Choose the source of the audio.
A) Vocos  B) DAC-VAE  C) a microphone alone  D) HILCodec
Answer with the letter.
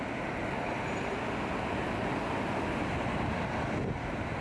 C